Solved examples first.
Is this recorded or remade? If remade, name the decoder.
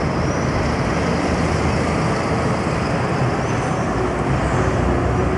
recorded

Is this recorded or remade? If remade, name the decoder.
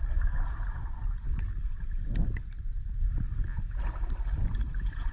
recorded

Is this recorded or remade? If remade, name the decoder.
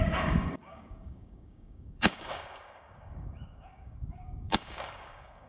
remade, codec, DAC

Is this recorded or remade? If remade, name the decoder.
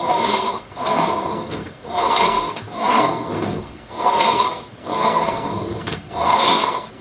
remade, codec, SNAC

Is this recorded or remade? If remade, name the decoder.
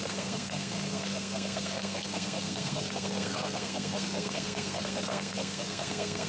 remade, codec, SNAC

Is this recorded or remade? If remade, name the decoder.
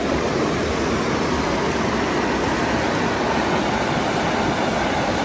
recorded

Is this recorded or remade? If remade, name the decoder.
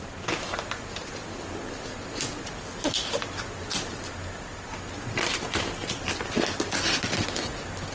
recorded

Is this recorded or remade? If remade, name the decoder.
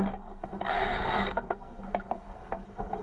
remade, codec, SNAC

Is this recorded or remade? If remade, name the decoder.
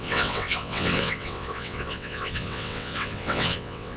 remade, vocoder, WaveNeXt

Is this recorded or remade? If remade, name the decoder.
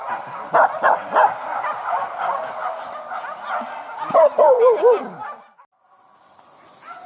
recorded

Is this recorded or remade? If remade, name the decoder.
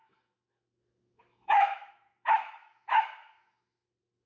remade, autoencoder, DAC-VAE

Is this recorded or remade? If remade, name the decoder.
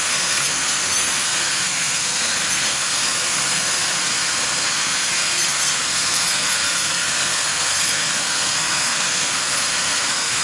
remade, codec, SNAC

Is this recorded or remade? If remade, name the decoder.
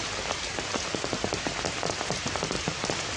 recorded